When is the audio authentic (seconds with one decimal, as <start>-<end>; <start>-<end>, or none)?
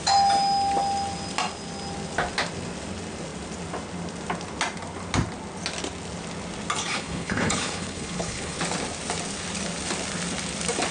0.0-6.8; 8.6-10.9